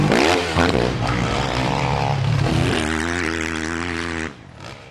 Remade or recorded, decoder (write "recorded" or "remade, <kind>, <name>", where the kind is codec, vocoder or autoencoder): recorded